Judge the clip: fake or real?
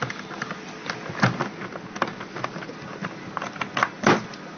real